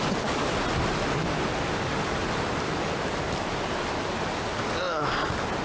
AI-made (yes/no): no